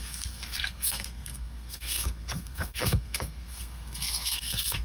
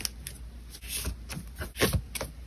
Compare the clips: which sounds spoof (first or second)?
first